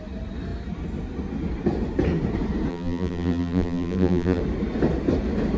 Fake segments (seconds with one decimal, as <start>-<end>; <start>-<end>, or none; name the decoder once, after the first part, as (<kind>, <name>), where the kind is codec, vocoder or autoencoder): 2.7-4.4 (vocoder, BigVGAN v2)